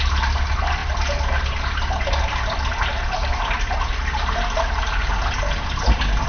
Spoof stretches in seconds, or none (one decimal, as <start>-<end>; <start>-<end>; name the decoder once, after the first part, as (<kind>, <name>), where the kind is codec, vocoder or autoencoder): none